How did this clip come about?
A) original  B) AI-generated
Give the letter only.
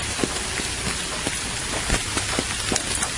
A